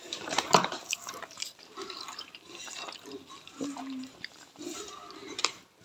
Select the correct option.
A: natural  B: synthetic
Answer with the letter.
B